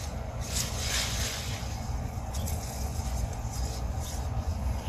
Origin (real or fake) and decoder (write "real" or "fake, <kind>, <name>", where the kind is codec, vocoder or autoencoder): fake, vocoder, Vocos